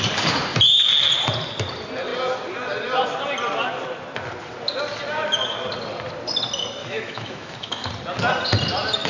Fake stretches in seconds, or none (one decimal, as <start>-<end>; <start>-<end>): 6.8-7.9